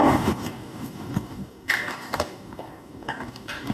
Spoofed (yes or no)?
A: yes